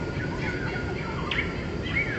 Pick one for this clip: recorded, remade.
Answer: recorded